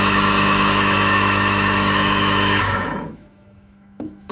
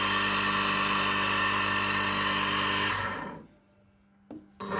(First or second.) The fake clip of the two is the first